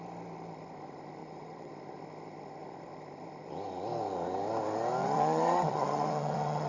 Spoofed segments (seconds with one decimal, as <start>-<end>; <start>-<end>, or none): 1.2-1.7; 5.0-6.7